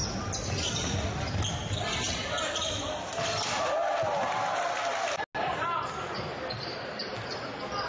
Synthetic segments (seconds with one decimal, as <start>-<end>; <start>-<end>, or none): none